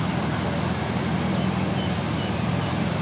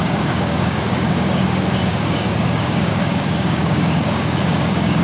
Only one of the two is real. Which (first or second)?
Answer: first